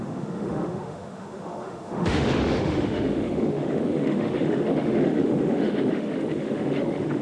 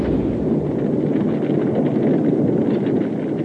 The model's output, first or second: first